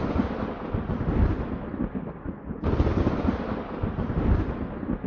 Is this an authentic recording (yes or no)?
yes